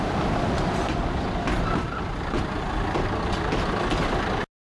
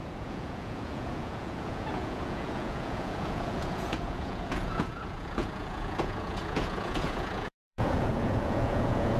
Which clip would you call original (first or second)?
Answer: first